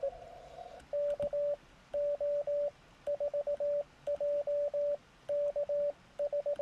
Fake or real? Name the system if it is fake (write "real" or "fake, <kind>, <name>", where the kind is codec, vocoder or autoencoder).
real